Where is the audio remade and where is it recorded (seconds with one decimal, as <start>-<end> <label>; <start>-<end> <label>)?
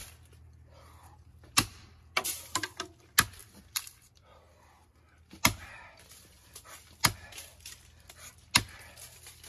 0.0-3.4 recorded; 3.4-4.7 remade; 4.7-9.5 recorded